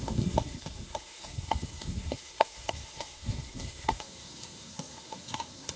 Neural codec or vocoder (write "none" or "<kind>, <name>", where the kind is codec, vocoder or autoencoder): codec, SNAC